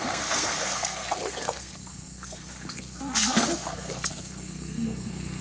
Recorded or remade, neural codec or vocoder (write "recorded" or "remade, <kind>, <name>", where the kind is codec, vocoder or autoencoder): remade, codec, SNAC